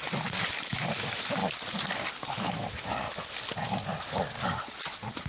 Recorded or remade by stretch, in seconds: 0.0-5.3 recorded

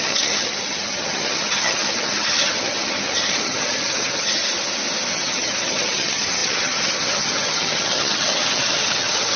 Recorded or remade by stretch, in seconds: 0.0-4.4 remade; 4.4-5.1 recorded; 5.1-9.4 remade

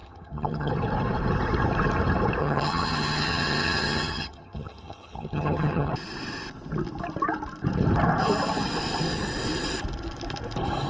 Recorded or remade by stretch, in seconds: 0.0-0.7 remade; 0.7-2.4 recorded; 2.4-5.9 remade; 5.9-10.9 recorded

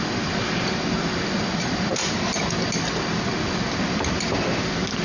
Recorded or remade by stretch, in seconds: 0.0-5.0 recorded

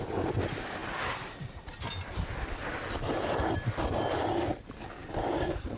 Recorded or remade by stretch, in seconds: 0.0-5.8 recorded

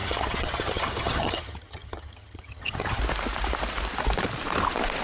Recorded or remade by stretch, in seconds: 0.0-3.0 remade; 3.0-5.0 recorded

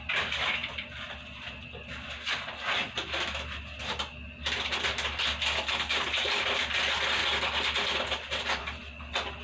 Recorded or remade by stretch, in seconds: 0.0-9.4 recorded